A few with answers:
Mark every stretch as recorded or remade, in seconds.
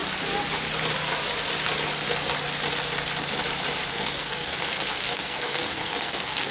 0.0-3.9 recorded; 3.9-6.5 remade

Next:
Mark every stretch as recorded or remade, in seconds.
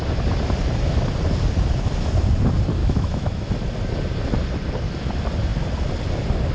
0.0-2.8 recorded; 2.8-3.5 remade; 3.5-6.5 recorded